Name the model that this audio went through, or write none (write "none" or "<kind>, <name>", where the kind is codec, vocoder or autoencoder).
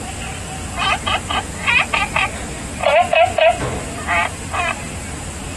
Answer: none